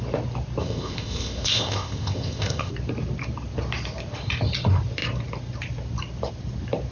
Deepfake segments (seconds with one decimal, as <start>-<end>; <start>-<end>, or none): 0.6-2.7